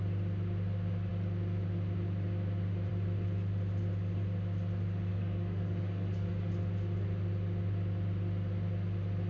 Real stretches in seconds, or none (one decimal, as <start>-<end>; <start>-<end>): 0.0-5.1; 6.5-9.3